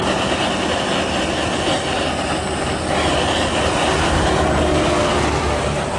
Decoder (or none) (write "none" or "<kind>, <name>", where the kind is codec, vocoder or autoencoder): none